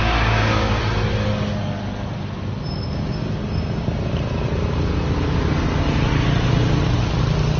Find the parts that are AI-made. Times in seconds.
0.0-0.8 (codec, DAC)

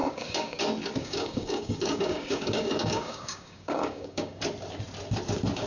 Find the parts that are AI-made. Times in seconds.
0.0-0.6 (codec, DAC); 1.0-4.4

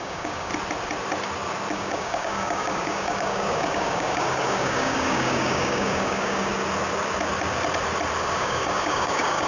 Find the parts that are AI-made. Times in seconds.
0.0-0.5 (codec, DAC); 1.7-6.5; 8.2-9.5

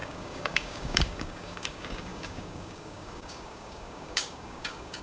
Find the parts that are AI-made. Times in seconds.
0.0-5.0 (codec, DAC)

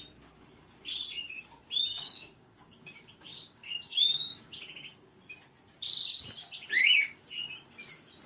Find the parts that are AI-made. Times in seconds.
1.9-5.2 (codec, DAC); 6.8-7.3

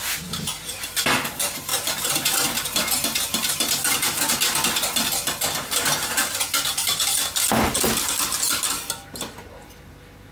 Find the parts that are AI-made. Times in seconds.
none

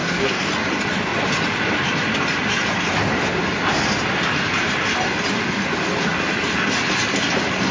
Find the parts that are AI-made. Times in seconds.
0.0-0.5 (codec, DAC)